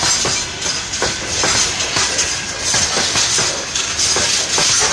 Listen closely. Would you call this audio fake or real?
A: real